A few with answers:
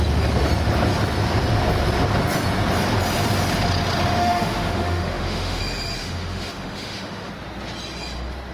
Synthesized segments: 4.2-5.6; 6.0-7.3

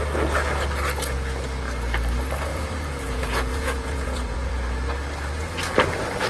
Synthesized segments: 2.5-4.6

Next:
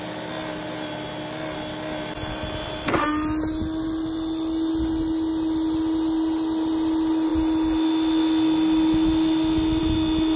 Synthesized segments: none

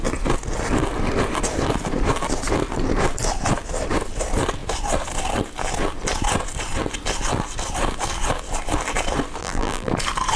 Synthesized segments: 9.4-9.9

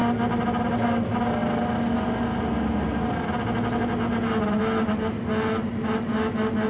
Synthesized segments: none

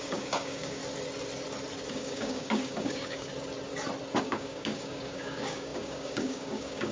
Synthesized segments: 0.0-0.8; 1.9-3.3; 4.2-6.9

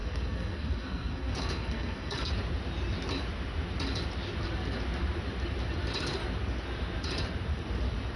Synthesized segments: 0.0-2.3

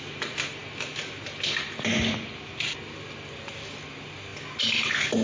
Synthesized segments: none